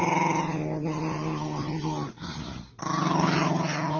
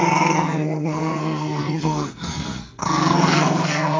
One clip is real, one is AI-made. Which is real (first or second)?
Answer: first